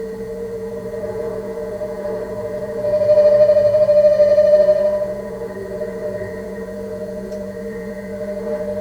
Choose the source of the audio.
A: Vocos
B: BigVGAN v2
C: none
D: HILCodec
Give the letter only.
A